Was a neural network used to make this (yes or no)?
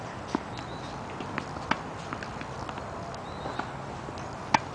no